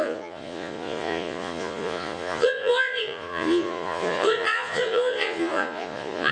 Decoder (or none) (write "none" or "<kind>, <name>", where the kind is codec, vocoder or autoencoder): vocoder, Vocos